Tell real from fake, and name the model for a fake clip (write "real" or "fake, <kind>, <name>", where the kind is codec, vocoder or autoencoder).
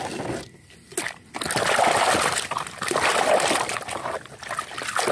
real